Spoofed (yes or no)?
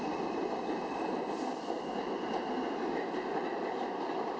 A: no